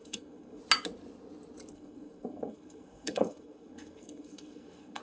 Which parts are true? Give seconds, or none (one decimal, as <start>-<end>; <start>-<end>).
0.6-1.7